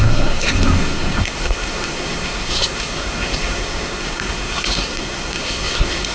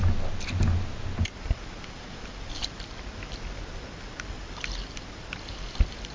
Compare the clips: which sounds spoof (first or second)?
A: first